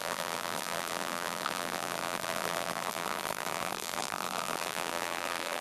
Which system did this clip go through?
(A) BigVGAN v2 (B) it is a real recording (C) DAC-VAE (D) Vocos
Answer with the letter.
A